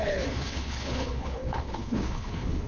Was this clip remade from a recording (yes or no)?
yes